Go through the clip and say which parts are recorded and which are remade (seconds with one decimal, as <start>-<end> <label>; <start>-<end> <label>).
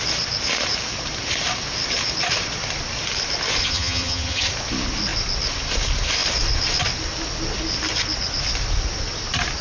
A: 0.0-3.6 recorded; 3.6-4.5 remade; 4.5-9.6 recorded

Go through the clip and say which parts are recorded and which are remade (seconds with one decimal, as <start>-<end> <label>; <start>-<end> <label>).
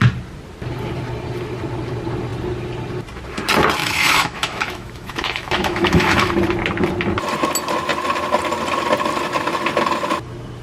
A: 0.0-3.8 recorded; 3.8-6.3 remade; 6.3-10.6 recorded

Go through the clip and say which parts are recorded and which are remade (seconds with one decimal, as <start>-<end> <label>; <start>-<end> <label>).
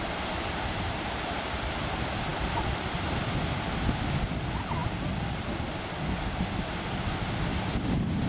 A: 0.0-8.3 recorded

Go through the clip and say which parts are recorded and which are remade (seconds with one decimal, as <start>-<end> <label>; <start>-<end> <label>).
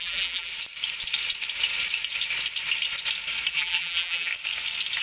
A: 0.0-0.5 remade; 0.5-3.5 recorded; 3.5-4.3 remade; 4.3-5.0 recorded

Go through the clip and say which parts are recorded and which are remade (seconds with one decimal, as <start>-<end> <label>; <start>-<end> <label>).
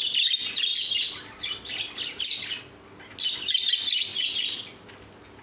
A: 0.0-5.4 recorded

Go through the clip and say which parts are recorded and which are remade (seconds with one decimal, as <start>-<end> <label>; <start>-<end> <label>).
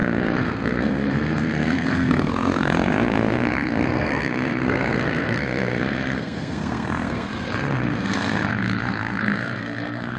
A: 0.0-10.2 remade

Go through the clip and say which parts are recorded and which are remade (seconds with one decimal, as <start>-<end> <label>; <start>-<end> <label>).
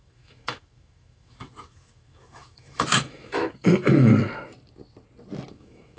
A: 0.0-4.1 remade; 4.1-5.5 recorded; 5.5-6.0 remade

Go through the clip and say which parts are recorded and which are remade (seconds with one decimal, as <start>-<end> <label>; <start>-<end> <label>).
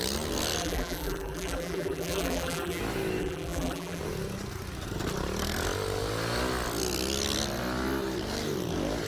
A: 0.0-0.6 recorded; 0.6-2.8 remade; 2.8-3.2 recorded; 3.2-4.0 remade; 4.0-9.1 recorded